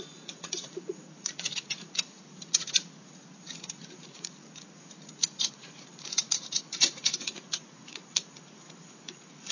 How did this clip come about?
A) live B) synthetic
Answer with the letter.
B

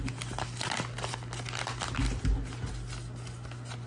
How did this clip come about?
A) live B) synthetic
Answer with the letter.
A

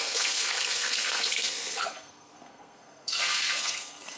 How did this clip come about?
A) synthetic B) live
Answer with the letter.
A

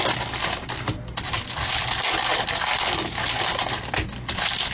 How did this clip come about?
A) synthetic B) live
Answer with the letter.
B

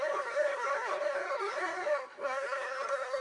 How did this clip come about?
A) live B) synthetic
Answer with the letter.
B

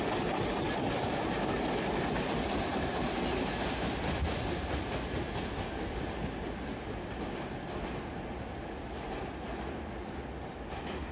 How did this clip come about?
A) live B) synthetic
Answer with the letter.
A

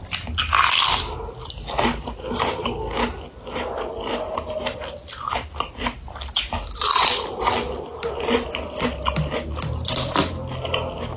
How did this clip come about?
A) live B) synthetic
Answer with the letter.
A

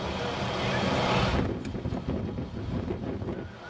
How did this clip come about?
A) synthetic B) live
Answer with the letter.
B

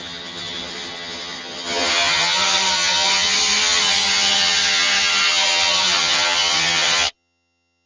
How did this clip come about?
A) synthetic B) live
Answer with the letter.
A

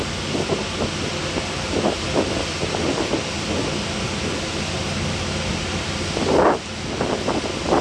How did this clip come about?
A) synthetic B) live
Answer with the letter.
B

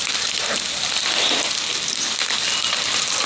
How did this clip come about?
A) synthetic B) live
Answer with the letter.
B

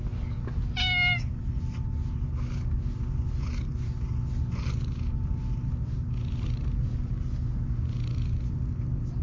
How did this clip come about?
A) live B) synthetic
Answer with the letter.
A